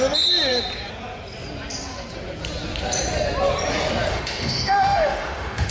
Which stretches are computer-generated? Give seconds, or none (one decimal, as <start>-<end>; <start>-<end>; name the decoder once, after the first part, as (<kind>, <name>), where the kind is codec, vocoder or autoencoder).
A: 4.1-5.7 (autoencoder, DAC-VAE)